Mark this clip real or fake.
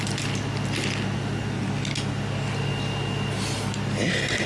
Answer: real